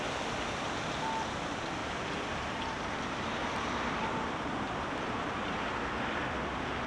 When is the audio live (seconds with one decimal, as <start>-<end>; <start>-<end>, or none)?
0.0-1.8; 5.9-6.9